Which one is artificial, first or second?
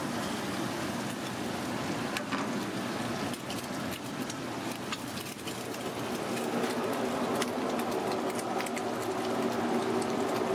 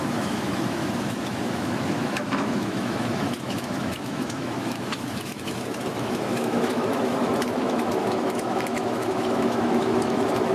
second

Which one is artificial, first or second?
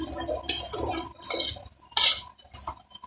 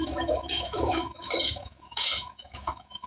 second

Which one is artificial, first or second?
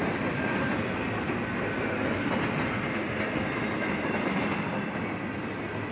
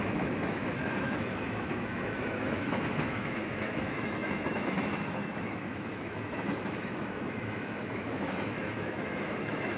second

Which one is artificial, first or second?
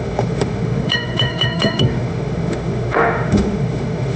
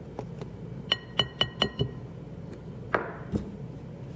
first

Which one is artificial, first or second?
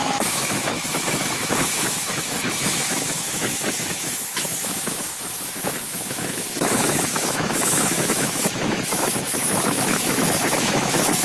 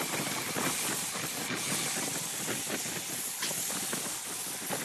first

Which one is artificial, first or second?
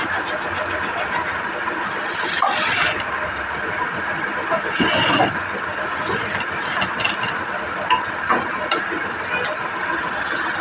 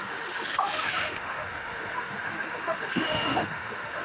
second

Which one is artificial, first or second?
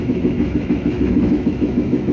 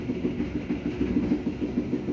first